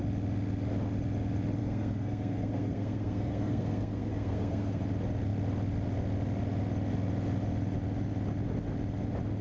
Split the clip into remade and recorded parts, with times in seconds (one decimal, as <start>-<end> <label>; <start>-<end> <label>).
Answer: 0.0-1.6 recorded; 1.6-4.8 remade; 4.8-9.4 recorded